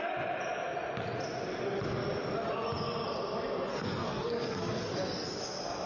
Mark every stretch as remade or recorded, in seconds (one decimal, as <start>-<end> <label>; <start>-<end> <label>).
0.0-3.7 recorded; 3.7-4.9 remade; 4.9-5.9 recorded